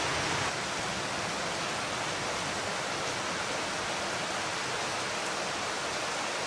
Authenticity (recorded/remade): recorded